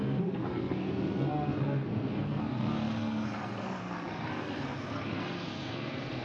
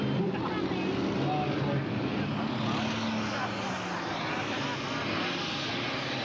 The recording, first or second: second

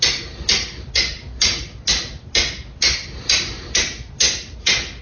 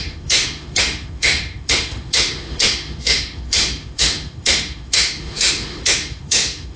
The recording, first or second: first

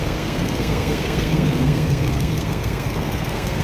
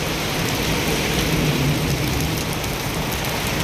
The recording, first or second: second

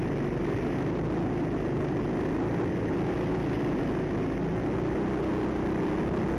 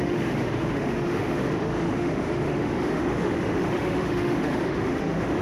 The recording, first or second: first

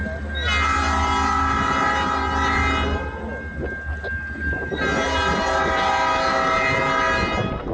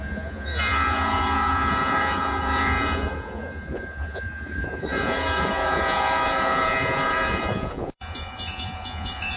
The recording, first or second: first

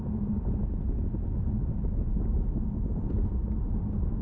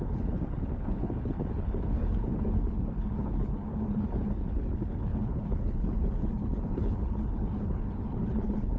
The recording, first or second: first